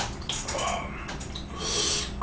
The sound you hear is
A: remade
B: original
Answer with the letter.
B